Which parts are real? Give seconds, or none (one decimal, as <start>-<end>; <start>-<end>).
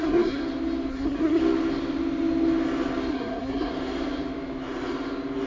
0.4-0.9; 1.4-3.1; 3.7-5.5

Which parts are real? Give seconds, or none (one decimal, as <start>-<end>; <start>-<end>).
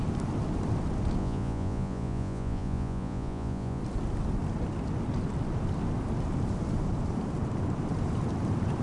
0.0-1.2; 3.8-8.8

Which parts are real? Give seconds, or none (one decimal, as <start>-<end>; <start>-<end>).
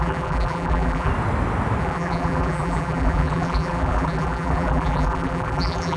1.1-1.8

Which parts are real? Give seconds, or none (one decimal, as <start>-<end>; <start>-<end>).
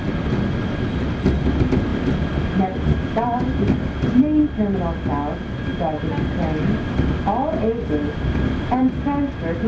0.0-9.7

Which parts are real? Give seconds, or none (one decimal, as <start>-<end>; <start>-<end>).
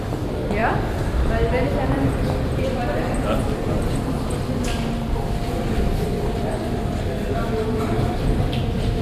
0.0-9.0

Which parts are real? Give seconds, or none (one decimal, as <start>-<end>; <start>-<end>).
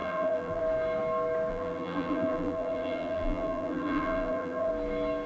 0.6-1.5; 4.7-5.3